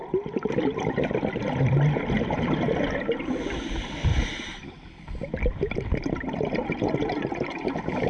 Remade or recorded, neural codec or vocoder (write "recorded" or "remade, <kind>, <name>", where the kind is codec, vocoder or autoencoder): recorded